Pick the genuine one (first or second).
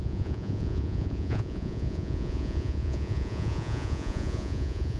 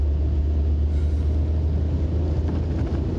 second